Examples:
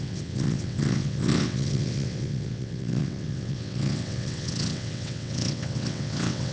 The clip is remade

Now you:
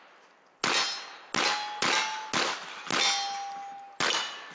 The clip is recorded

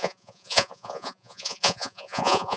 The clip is remade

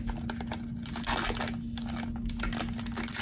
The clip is recorded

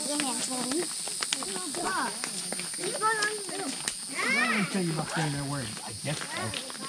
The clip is recorded